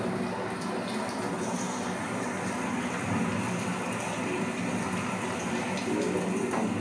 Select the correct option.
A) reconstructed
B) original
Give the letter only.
B